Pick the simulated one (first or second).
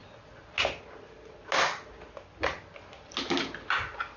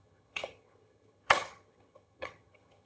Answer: second